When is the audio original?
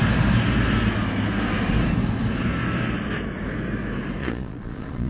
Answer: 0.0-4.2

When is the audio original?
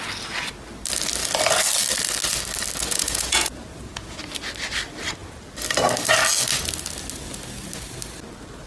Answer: 0.0-2.8; 4.2-8.7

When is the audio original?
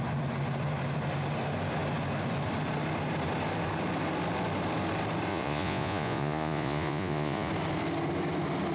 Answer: 0.0-5.3; 7.5-8.7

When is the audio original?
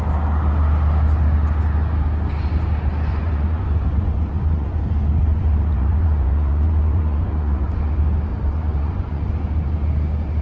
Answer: 0.0-3.1; 4.8-5.3; 7.9-8.3; 9.3-10.4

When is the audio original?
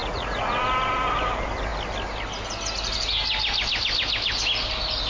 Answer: 0.6-5.1